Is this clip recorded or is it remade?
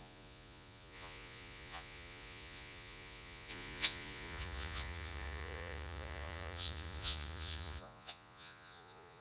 remade